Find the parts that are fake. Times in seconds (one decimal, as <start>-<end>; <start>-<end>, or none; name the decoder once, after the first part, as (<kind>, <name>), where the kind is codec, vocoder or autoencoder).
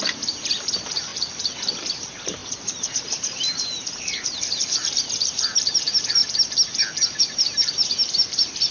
0.0-1.1 (vocoder, BigVGAN v2); 1.9-6.2; 7.2-8.7